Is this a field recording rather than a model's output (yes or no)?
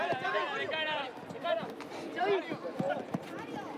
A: yes